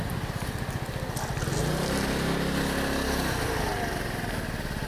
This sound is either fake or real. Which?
real